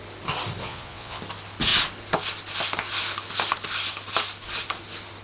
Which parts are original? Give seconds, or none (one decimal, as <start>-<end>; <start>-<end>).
0.0-0.6; 1.2-5.2